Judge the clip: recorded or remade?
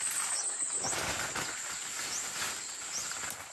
recorded